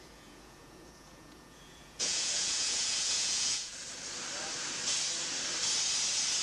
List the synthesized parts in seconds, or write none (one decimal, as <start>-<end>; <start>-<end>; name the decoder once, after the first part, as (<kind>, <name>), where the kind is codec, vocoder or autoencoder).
0.0-3.7 (vocoder, Vocos)